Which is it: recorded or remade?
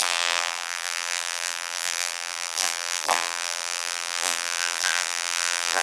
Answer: remade